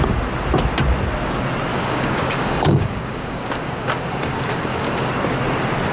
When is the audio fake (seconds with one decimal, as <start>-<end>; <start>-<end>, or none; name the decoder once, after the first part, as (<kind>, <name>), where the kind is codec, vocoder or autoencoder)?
1.7-5.1 (codec, DAC)

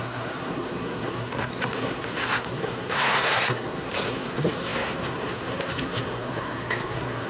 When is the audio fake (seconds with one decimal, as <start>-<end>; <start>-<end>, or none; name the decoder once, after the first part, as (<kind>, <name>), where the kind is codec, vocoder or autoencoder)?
0.0-7.3 (codec, SNAC)